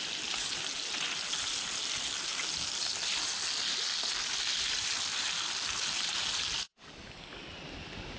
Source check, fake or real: real